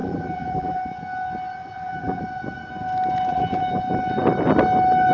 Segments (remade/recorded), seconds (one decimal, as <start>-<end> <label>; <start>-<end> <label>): 0.0-0.8 remade; 0.8-1.6 recorded; 1.6-2.2 remade; 2.2-3.3 recorded; 3.3-3.8 remade; 3.8-5.1 recorded